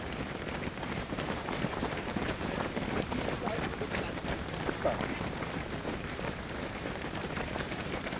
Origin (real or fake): fake